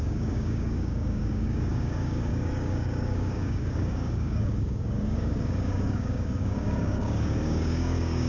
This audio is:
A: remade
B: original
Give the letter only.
A